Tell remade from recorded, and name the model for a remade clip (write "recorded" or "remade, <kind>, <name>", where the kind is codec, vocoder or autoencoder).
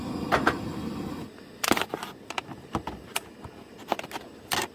recorded